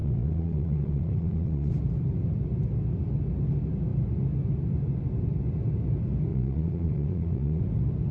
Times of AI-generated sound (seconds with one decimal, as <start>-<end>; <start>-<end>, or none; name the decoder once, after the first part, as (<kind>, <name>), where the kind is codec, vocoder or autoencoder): 0.0-1.7 (vocoder, Vocos); 6.3-7.6